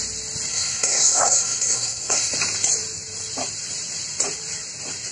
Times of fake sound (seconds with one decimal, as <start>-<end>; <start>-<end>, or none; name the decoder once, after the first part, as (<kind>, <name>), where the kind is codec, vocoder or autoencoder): 0.5-2.3 (codec, SNAC)